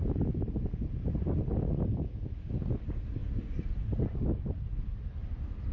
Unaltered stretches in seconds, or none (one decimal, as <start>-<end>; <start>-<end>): 0.0-5.7